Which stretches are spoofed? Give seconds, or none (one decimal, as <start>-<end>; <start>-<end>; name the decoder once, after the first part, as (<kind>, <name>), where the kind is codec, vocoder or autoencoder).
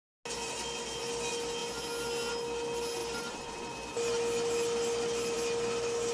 3.0-3.5 (vocoder, BigVGAN v2)